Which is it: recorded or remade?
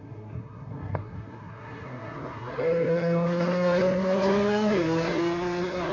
remade